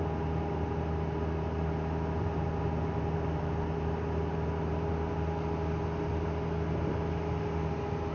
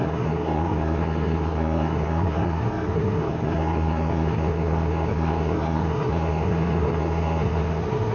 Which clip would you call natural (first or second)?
first